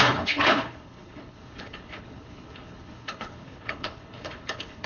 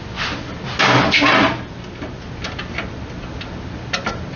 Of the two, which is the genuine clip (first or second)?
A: second